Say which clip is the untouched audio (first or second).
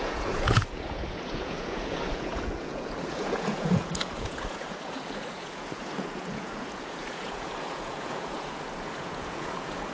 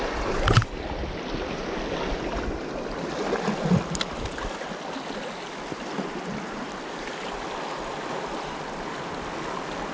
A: second